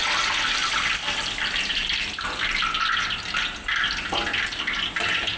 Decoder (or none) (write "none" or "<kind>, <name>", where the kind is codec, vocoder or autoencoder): none